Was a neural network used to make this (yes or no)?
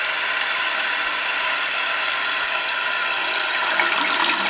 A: yes